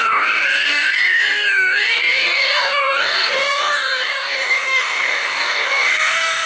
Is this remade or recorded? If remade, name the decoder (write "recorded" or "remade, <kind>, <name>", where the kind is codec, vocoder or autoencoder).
remade, codec, DAC